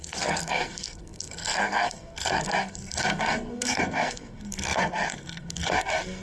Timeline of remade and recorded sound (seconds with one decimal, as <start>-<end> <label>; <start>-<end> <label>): 0.0-6.2 remade